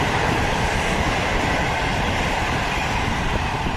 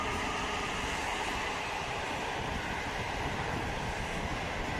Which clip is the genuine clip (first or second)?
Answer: second